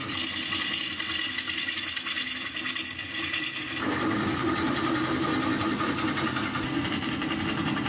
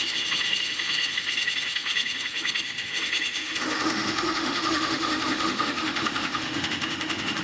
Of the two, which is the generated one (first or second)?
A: second